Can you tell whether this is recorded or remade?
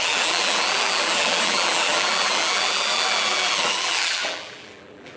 remade